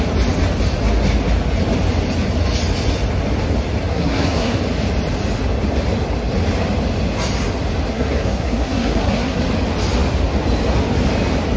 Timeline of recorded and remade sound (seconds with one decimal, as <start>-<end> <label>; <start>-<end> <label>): 0.0-3.9 recorded; 3.9-4.6 remade; 4.6-7.9 recorded; 7.9-9.4 remade; 9.4-11.6 recorded